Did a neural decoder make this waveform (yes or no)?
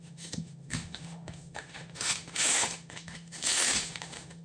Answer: yes